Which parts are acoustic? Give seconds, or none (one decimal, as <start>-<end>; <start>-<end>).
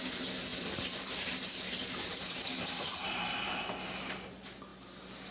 0.0-0.5; 3.7-5.3